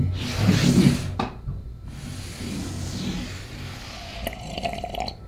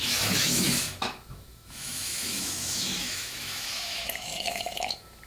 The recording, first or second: first